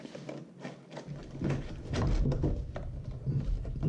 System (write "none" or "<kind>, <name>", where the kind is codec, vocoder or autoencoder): none